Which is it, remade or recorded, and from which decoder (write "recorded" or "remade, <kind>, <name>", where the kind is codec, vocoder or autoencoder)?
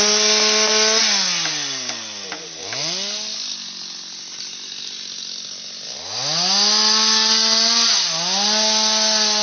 recorded